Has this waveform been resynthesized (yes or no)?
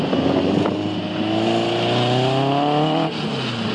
no